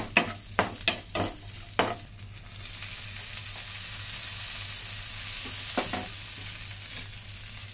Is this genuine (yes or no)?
yes